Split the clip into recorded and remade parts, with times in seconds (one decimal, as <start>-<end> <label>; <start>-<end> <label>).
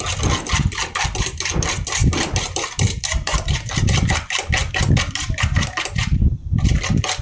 0.0-2.0 recorded; 2.0-4.1 remade; 4.1-4.6 recorded; 4.6-6.8 remade; 6.8-7.2 recorded